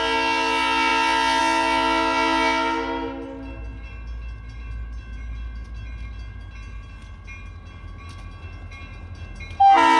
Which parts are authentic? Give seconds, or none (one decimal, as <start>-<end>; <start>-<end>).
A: 0.0-10.0